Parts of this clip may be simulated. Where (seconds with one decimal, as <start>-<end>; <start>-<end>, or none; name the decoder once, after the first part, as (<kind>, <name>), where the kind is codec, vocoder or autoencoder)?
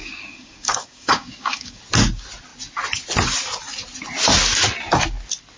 0.0-1.8 (codec, DAC)